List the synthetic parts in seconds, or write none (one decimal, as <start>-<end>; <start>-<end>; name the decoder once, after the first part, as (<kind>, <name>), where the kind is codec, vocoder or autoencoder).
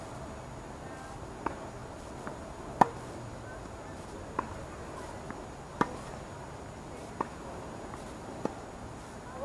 none